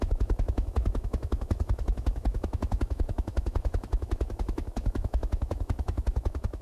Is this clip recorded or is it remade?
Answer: remade